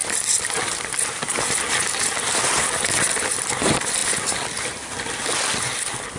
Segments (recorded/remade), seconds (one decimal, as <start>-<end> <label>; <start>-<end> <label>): 0.0-6.2 recorded